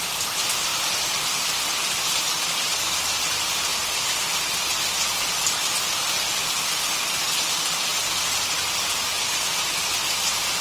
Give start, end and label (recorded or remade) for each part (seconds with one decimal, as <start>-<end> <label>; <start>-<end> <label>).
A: 0.0-10.6 remade